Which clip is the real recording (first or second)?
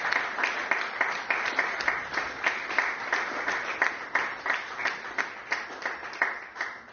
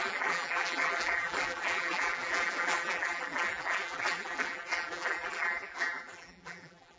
first